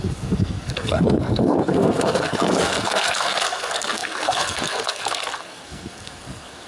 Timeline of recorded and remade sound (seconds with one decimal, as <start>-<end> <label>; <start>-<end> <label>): 0.0-6.7 remade